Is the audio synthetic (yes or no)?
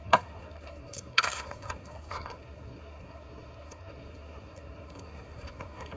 yes